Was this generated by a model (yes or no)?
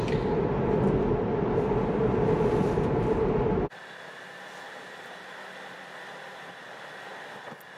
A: no